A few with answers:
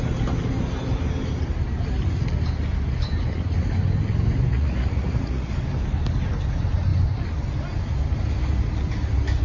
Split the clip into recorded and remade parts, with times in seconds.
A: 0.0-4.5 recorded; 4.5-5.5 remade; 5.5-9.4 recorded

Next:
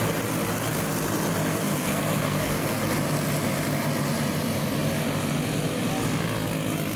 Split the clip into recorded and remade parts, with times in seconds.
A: 0.0-1.5 recorded; 1.5-2.8 remade; 2.8-7.0 recorded

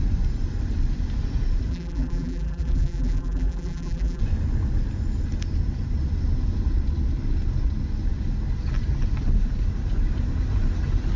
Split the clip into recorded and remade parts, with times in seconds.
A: 0.0-1.7 recorded; 1.7-4.2 remade; 4.2-11.2 recorded